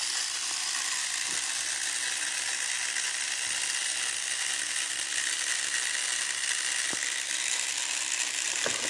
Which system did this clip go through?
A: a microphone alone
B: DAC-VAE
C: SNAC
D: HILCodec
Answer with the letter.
A